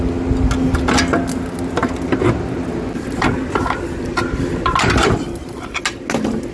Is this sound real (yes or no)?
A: yes